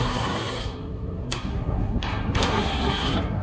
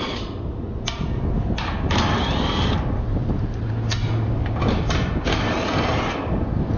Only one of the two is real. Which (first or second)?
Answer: second